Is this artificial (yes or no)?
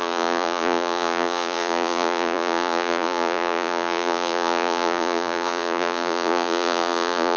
yes